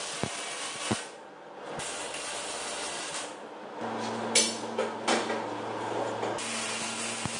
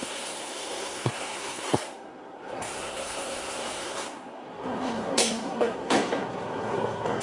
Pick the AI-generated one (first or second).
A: second